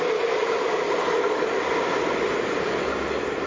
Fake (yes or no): no